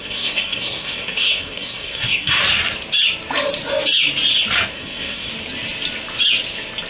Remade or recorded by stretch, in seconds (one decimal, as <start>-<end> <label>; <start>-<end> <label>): 0.0-2.4 remade; 2.4-4.7 recorded; 4.7-5.3 remade; 5.3-6.9 recorded